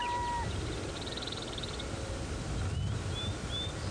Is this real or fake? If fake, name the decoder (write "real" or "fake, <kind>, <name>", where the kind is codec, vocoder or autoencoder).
real